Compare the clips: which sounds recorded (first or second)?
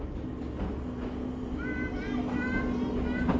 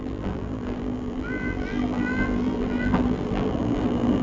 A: first